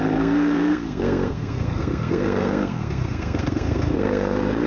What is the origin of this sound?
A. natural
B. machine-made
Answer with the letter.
B